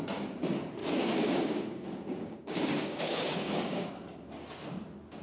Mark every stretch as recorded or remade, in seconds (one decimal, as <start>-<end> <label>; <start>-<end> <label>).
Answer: 0.0-0.8 recorded; 0.8-3.9 remade; 3.9-5.2 recorded